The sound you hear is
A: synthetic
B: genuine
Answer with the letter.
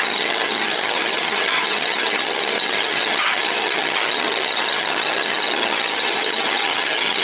A